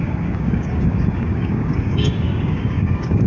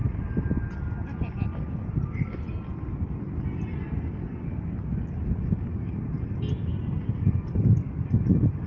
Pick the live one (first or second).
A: second